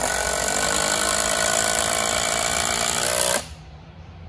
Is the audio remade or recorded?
remade